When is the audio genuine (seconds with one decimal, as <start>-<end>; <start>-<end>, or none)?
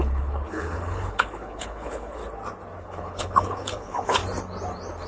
2.2-2.8; 4.2-5.1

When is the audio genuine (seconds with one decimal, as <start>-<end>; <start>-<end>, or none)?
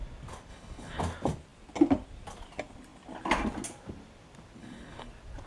0.0-0.5; 1.0-4.6; 5.1-5.5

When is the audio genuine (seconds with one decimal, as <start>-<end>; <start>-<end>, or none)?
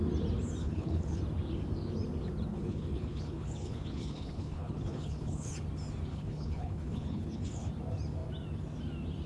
0.0-0.6; 1.2-2.5; 5.5-6.1; 7.7-9.3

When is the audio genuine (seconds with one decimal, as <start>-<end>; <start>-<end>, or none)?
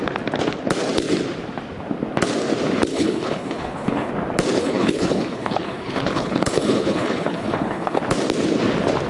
0.0-2.9; 4.1-4.6; 8.0-9.1